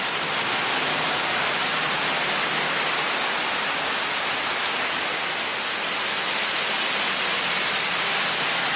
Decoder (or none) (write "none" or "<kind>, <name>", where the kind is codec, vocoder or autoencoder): none